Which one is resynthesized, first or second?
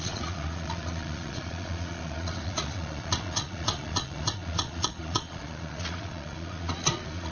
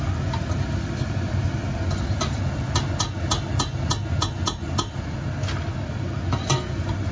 first